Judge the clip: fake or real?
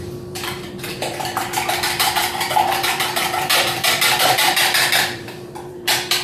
fake